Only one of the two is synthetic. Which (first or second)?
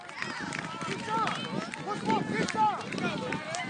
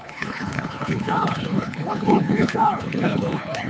second